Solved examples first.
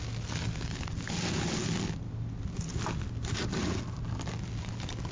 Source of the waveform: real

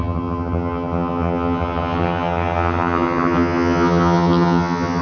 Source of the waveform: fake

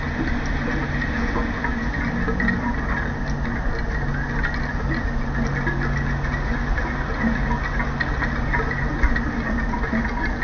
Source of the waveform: real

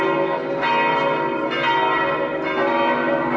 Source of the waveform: real